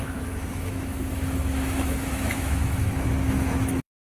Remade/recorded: remade